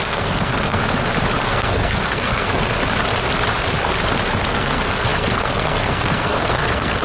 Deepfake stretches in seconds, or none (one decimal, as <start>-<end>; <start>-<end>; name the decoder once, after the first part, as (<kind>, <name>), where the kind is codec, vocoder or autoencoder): 0.0-0.8 (codec, SNAC); 1.4-2.7; 4.4-7.0